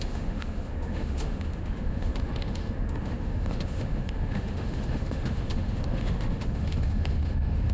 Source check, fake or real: fake